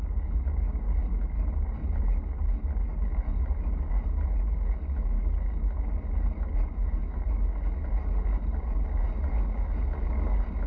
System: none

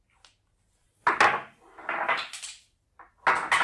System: none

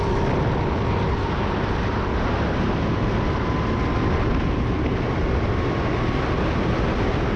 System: none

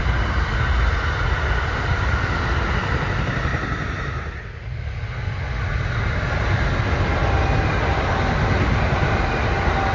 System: none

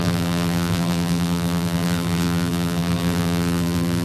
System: vocoder, BigVGAN v2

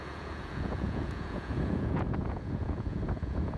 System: vocoder, Vocos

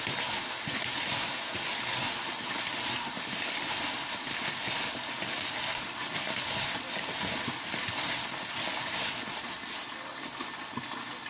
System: none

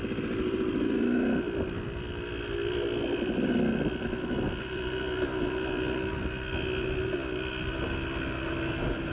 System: none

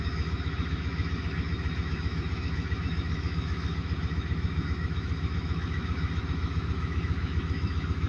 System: autoencoder, DAC-VAE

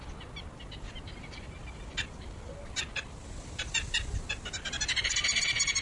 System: none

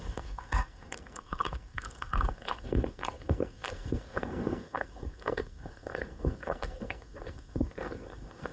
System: codec, SNAC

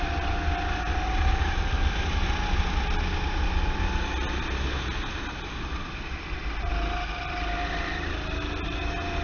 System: none